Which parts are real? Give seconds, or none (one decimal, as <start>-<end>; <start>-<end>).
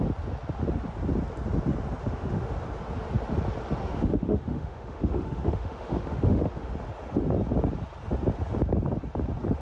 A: 0.0-2.0; 2.5-3.8; 6.7-9.6